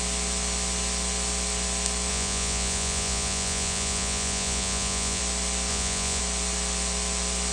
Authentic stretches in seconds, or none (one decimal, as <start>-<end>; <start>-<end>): 0.0-2.1; 5.2-5.7; 6.2-7.5